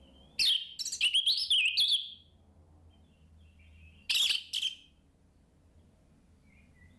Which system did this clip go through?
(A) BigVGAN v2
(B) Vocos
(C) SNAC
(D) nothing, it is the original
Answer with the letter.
D